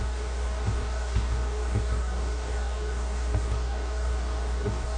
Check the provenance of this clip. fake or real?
fake